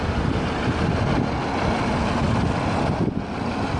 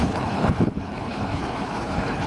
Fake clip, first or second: second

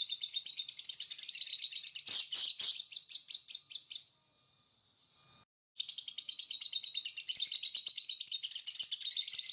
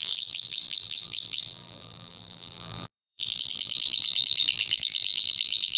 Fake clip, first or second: second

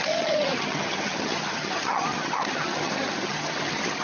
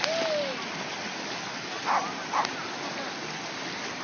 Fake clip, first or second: first